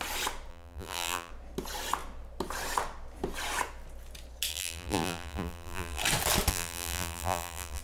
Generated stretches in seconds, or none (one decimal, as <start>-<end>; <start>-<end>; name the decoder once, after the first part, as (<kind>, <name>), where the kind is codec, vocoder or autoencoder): 0.5-1.3 (vocoder, BigVGAN v2); 4.5-6.0; 6.5-7.8